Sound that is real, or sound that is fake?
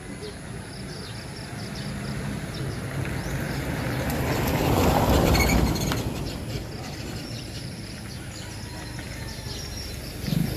real